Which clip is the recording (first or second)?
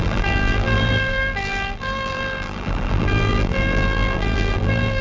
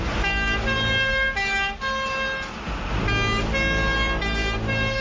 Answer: second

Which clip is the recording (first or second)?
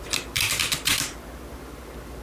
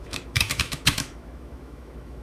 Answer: first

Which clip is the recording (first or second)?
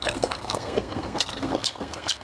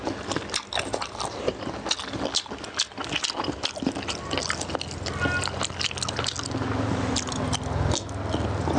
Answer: second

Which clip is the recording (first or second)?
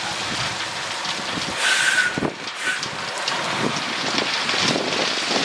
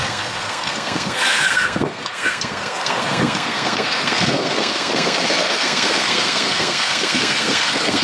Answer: first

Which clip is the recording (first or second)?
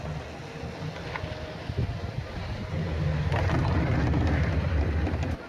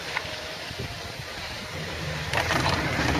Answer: first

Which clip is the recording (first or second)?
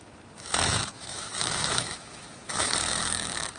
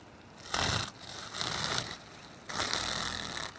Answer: second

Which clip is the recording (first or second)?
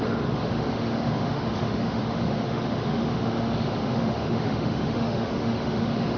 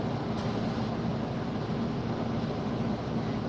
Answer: second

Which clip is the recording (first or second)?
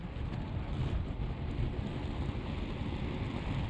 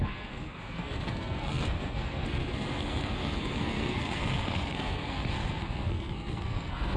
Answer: first